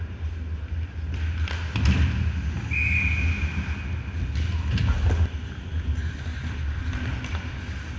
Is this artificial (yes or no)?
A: no